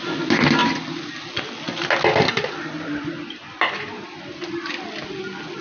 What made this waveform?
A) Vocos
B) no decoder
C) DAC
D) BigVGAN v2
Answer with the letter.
B